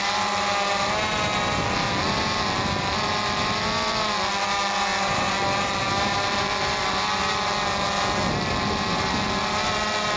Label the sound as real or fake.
real